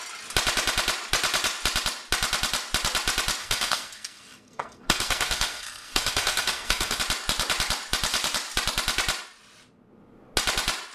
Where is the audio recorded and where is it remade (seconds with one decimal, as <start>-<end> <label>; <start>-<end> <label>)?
0.0-3.4 recorded; 3.4-7.0 remade; 7.0-10.9 recorded